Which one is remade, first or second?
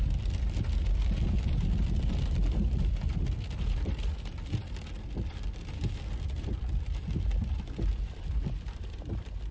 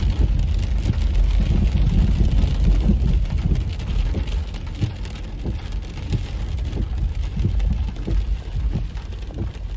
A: first